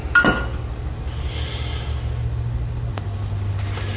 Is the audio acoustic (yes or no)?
yes